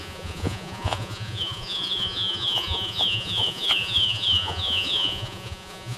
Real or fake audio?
fake